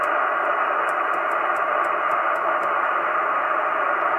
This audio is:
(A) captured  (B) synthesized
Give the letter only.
A